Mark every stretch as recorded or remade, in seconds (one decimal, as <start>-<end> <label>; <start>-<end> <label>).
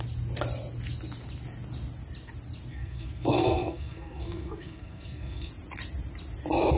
0.0-2.7 recorded; 2.7-5.5 remade; 5.5-6.8 recorded